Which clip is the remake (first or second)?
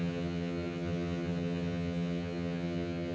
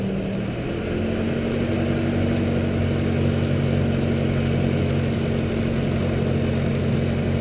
first